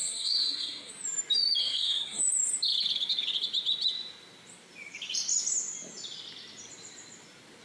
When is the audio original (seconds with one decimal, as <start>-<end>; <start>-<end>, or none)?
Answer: 0.9-1.6; 2.2-7.6